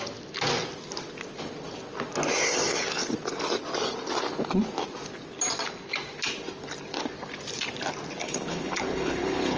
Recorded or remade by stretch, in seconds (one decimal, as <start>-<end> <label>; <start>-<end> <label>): 0.0-8.2 recorded; 8.2-9.6 remade